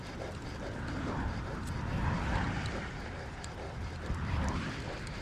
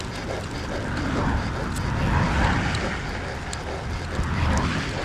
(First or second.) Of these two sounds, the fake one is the first